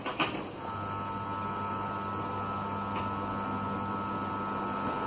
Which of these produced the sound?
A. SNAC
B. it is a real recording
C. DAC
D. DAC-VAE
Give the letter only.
B